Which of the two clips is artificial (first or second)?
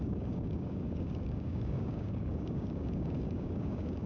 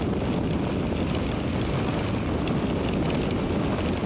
first